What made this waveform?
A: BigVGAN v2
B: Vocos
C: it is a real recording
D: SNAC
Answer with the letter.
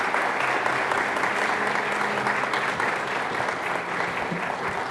C